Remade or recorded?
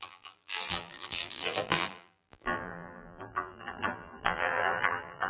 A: remade